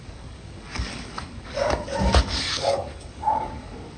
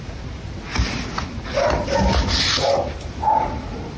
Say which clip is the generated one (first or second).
first